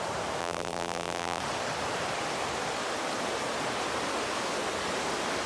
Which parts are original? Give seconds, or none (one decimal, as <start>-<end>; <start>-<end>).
0.0-0.4; 1.4-5.5